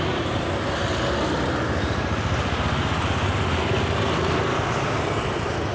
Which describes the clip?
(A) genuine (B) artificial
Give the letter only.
A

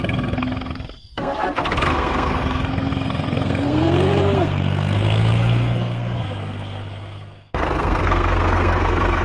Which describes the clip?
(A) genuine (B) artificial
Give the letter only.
B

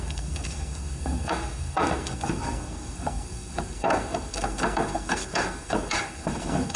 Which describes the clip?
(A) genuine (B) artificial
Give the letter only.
B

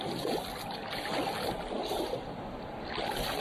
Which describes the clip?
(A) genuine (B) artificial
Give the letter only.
A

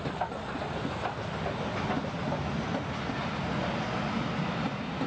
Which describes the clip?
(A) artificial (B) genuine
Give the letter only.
B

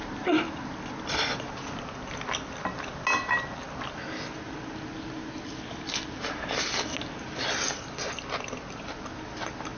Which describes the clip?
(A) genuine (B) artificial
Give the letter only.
A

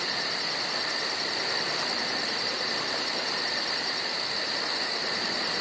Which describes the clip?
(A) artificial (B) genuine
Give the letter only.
B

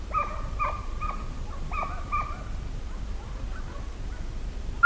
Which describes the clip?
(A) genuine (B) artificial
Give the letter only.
A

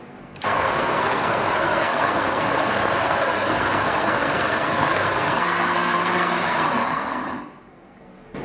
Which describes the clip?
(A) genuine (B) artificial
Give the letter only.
B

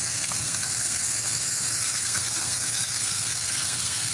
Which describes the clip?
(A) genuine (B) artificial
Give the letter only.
B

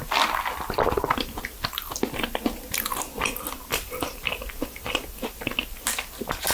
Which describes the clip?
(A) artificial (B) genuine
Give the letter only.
B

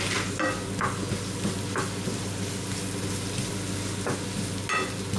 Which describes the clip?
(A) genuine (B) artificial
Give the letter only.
A